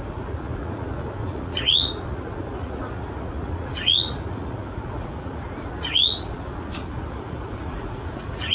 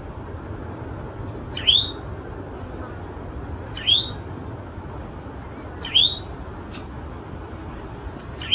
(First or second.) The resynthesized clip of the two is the first